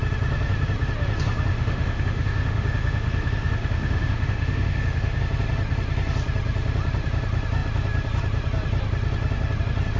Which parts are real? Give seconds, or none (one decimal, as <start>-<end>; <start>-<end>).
0.0-1.5; 5.2-10.0